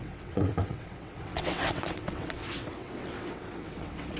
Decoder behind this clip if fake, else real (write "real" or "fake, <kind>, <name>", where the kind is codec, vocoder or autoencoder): fake, vocoder, WaveNeXt